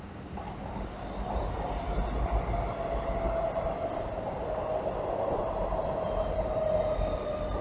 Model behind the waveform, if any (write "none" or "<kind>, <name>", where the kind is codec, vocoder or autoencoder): none